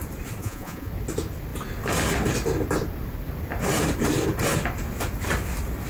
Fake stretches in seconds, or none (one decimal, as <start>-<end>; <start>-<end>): 0.4-0.9